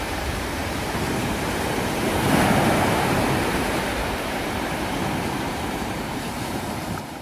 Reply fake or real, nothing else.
fake